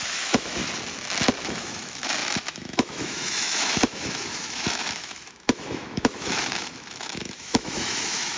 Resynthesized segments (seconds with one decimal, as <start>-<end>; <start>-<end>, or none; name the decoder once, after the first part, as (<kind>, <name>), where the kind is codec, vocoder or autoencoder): 0.0-0.6 (autoencoder, DAC-VAE); 1.4-8.4